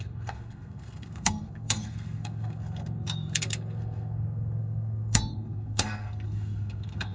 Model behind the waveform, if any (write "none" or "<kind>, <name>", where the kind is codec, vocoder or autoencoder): codec, SNAC